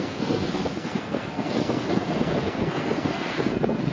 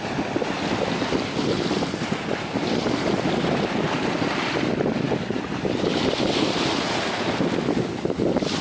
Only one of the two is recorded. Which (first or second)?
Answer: second